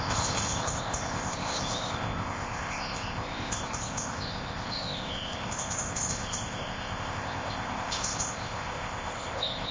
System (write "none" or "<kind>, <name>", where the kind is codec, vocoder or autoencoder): codec, ZipCodec